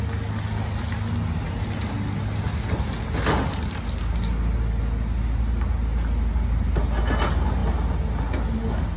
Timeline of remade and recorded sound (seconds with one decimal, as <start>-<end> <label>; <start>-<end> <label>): 0.0-9.0 recorded